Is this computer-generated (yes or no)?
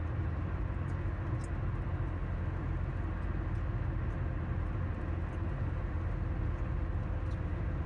no